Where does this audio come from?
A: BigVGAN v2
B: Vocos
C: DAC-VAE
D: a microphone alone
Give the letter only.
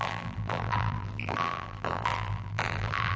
A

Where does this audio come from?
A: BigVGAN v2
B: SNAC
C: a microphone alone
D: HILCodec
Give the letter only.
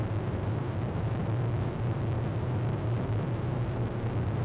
A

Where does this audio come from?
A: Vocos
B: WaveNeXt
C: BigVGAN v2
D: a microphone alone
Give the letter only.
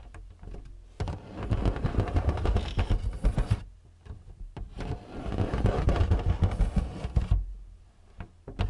D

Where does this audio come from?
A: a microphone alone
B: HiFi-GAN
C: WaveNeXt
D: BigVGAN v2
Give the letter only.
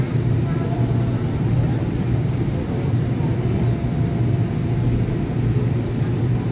D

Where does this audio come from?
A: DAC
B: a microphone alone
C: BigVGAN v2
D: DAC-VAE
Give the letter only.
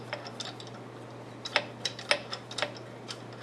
B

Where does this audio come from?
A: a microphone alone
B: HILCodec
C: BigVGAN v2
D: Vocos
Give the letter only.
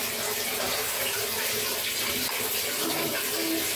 A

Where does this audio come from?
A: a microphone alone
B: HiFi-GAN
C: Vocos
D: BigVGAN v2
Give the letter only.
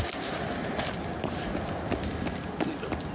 A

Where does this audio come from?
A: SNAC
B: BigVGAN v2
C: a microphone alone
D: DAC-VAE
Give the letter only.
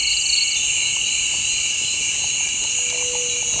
C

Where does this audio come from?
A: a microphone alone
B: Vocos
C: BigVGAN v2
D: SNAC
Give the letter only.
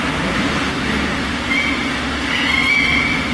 A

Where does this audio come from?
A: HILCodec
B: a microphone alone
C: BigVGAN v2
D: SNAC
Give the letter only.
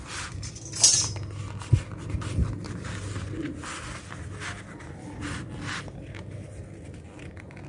B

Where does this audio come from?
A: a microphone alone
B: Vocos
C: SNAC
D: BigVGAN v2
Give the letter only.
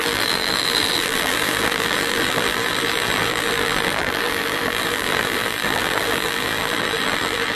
D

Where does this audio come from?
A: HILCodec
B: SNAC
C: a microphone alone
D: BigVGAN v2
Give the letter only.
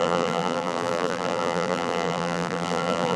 D